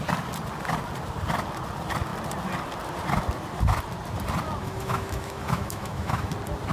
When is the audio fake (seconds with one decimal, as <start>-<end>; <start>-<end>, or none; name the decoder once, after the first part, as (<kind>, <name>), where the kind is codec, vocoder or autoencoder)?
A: 4.6-6.3 (autoencoder, DAC-VAE)